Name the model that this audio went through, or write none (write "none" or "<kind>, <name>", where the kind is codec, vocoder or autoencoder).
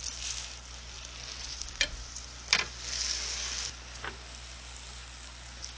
none